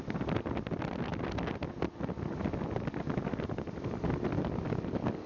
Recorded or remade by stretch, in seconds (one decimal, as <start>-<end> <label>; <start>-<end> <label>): 0.0-5.3 recorded